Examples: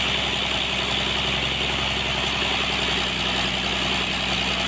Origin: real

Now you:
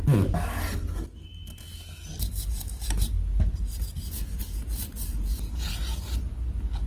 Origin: real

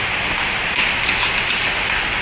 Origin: real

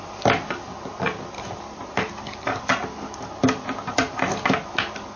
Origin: real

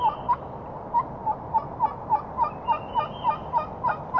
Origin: real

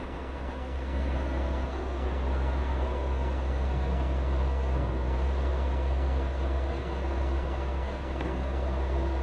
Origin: fake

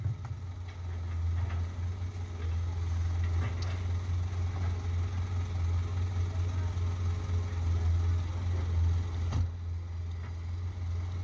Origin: real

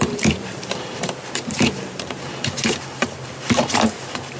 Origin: fake